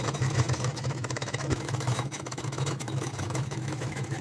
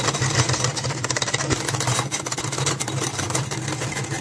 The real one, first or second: second